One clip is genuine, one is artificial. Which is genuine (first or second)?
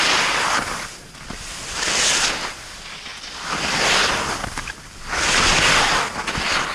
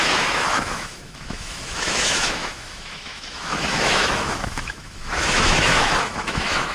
first